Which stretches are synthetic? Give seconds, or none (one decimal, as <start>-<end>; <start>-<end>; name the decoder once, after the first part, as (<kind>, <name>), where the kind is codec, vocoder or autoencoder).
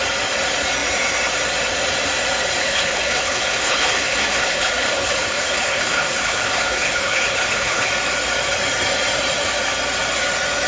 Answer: 2.6-7.9 (codec, HILCodec)